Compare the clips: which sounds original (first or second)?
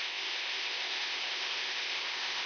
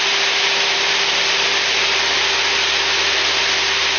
second